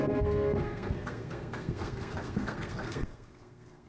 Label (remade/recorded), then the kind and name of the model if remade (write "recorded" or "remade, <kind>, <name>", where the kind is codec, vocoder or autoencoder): remade, codec, SNAC